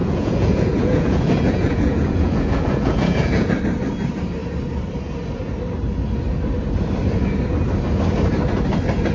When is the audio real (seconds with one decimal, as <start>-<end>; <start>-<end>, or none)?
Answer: 3.5-9.1